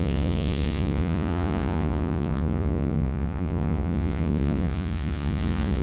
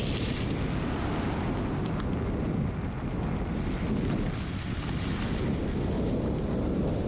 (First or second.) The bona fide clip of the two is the second